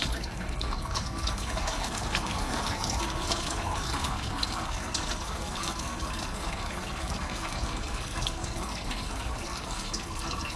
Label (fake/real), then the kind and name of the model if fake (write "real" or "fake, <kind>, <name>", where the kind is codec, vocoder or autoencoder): fake, codec, SNAC